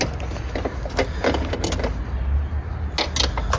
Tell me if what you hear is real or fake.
real